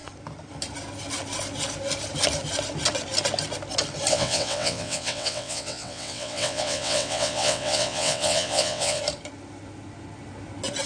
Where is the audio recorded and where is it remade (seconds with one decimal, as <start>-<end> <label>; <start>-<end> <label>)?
0.0-4.1 recorded; 4.1-9.0 remade; 9.0-10.9 recorded